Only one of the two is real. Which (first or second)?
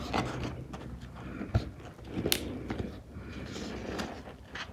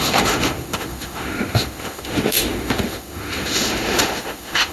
first